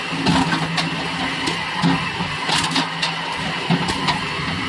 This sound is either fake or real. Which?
real